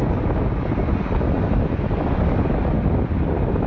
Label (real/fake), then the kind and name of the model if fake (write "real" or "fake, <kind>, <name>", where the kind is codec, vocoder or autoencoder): real